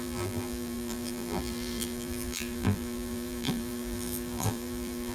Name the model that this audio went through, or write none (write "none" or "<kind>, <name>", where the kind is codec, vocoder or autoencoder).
vocoder, BigVGAN v2